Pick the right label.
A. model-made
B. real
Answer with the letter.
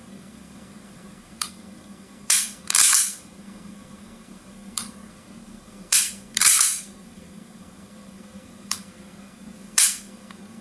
A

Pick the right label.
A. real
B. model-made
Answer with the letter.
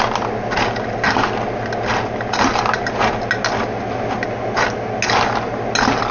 A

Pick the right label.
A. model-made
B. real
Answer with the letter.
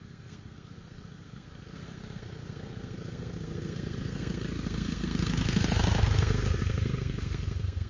A